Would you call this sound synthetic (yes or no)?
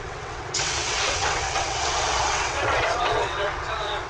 yes